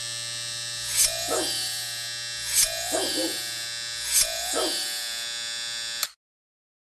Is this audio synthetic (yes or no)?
no